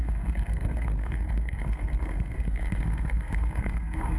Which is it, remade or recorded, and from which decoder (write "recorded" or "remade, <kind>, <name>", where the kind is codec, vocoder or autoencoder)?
remade, codec, SNAC